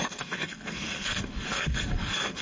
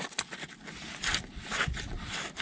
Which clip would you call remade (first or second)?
first